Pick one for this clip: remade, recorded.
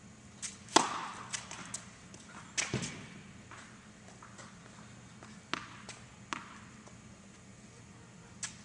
recorded